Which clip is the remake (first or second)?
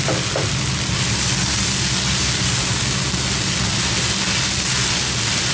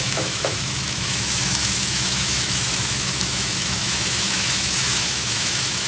second